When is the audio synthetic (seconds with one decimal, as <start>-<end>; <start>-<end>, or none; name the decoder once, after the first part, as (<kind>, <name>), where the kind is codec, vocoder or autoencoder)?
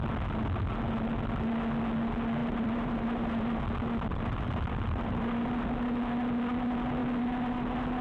2.4-3.6 (vocoder, BigVGAN v2); 4.1-5.5